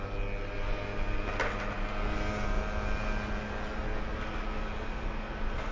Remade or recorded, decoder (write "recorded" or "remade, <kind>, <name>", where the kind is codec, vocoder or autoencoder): recorded